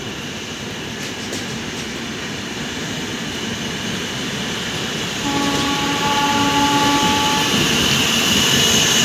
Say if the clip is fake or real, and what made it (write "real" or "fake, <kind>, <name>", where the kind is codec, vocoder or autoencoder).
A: real